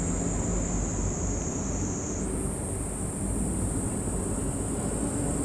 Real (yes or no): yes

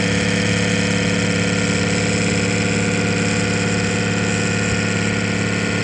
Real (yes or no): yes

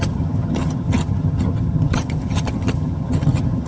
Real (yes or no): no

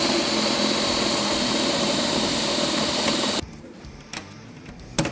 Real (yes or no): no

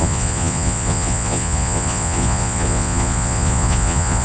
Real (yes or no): no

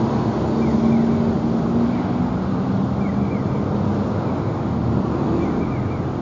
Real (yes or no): yes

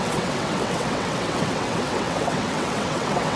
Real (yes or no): no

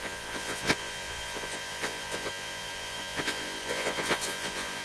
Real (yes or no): no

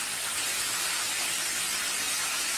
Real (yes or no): yes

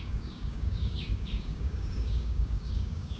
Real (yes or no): no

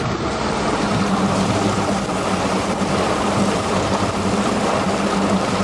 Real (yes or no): yes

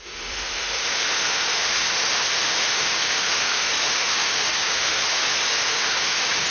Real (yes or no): no